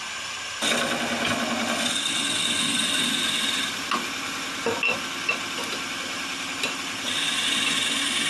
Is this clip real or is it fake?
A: real